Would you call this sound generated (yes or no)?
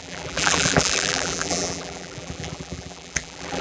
yes